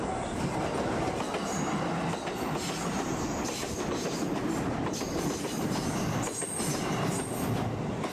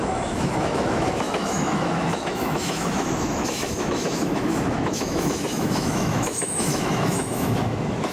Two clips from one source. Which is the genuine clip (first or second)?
first